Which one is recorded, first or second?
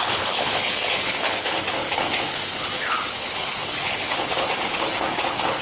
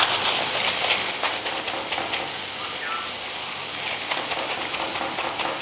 second